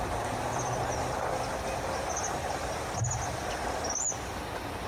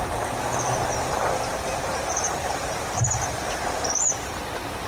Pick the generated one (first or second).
second